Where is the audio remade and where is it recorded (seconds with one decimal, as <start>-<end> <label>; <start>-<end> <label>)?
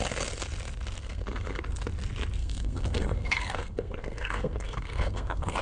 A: 0.0-1.0 recorded; 1.0-1.6 remade; 1.6-2.4 recorded; 2.4-5.6 remade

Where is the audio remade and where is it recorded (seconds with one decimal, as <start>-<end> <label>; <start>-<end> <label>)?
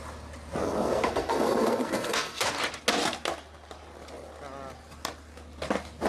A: 0.0-0.6 recorded; 0.6-2.5 remade; 2.5-6.1 recorded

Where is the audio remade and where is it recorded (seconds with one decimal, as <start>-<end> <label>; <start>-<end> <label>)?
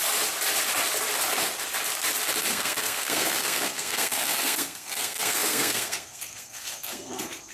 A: 0.0-2.5 recorded; 2.5-7.5 remade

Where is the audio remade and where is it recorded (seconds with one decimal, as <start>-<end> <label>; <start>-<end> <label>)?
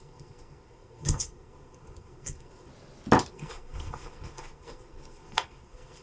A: 0.0-2.7 remade; 2.7-3.3 recorded; 3.3-6.0 remade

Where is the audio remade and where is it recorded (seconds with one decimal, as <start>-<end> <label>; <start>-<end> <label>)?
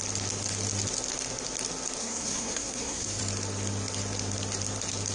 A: 0.0-2.0 recorded; 2.0-3.2 remade; 3.2-5.1 recorded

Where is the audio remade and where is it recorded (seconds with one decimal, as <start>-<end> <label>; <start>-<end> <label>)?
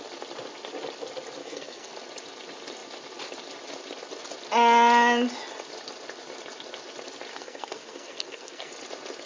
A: 0.0-1.4 recorded; 1.4-1.9 remade; 1.9-7.3 recorded; 7.3-8.7 remade; 8.7-9.3 recorded